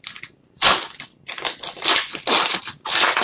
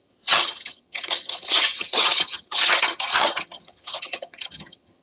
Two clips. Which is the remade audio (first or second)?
second